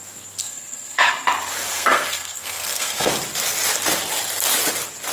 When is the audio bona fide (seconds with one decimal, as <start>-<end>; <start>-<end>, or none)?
0.0-0.4; 1.1-1.7; 3.1-5.1